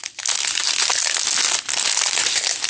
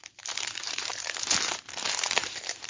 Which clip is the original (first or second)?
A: first